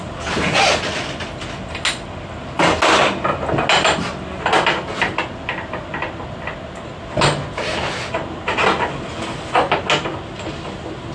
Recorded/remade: recorded